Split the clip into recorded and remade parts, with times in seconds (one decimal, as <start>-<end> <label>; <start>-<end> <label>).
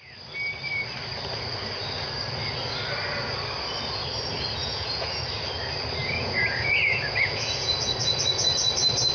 0.0-4.6 recorded; 4.6-5.2 remade; 5.2-6.0 recorded; 6.0-7.9 remade; 7.9-9.1 recorded